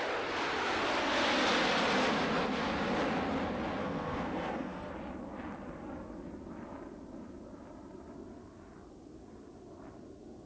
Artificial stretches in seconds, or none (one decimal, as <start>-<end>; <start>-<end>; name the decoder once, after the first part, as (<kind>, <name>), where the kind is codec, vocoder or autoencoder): 3.8-4.9 (codec, SNAC)